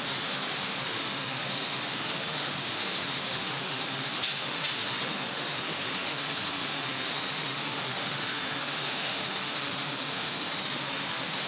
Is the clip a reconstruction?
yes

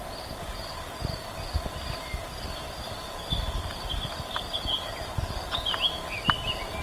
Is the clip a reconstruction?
no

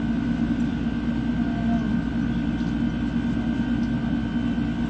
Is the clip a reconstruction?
no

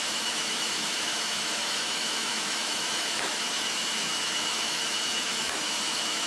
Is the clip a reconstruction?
yes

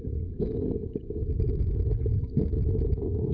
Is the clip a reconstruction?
yes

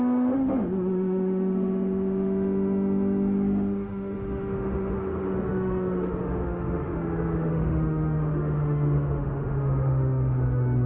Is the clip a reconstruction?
yes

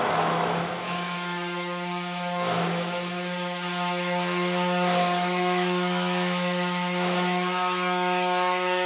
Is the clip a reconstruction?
yes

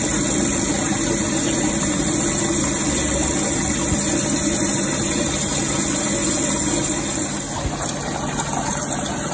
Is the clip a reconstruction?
no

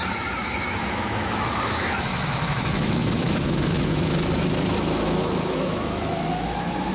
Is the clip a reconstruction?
yes